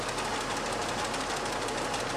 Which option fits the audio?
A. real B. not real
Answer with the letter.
A